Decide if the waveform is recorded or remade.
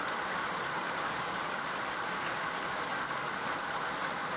recorded